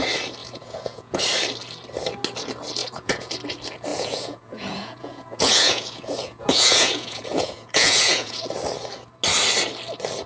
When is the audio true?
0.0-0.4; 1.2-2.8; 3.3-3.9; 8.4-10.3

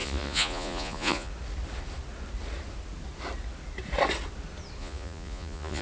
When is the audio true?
1.3-4.8

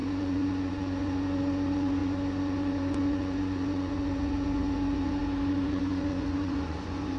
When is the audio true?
none

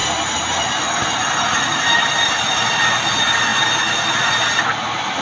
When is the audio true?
0.0-5.2